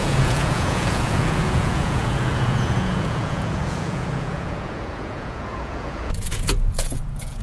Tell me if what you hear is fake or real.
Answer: fake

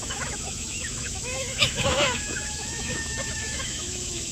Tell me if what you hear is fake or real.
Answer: fake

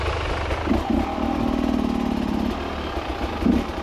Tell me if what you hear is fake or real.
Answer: real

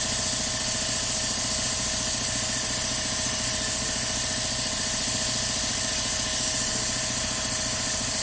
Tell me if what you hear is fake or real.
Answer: real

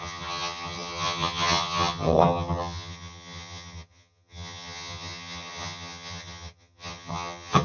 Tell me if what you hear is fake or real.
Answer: fake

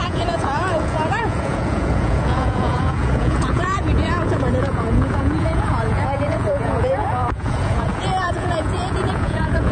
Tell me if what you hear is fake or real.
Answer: fake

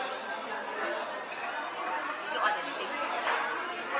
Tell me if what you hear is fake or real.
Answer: real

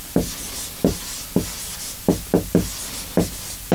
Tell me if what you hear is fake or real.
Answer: real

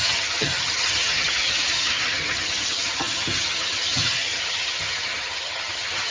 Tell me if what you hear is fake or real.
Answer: fake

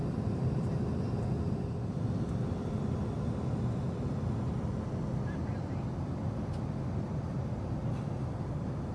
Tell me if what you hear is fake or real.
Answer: real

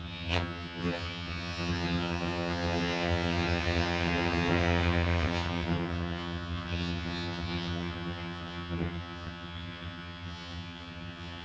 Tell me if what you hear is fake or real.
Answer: fake